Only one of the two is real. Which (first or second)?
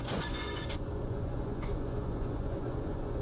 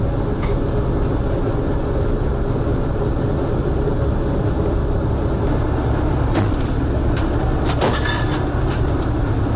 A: second